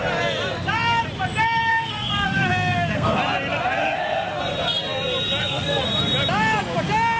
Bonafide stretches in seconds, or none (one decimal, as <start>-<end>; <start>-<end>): 0.0-1.7; 3.2-3.8; 4.4-5.4; 5.9-7.2